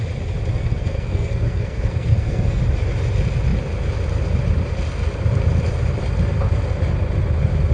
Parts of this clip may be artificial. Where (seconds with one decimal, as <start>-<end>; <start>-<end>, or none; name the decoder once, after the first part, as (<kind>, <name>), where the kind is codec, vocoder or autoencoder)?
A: 0.5-2.6 (codec, SNAC)